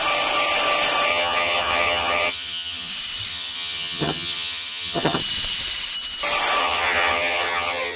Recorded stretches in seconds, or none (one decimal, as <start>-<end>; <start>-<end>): 0.0-1.1; 2.9-3.3; 5.2-6.6